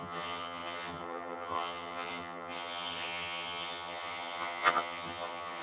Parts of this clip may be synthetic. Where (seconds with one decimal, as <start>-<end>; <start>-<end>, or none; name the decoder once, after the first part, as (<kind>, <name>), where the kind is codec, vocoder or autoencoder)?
0.0-5.6 (vocoder, HiFi-GAN)